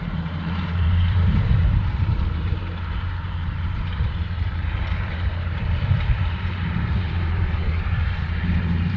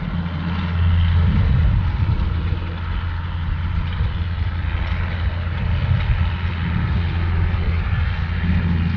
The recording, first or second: second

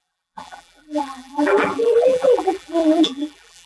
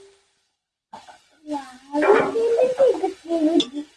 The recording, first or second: second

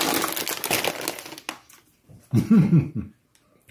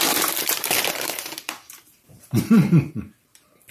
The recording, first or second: first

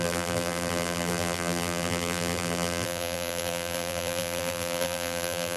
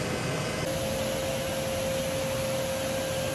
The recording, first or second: second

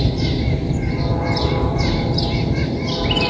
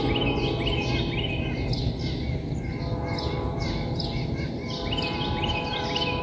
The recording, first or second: second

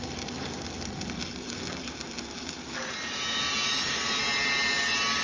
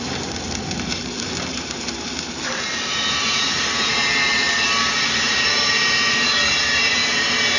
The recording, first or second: first